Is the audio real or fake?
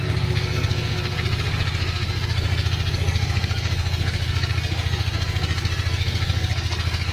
fake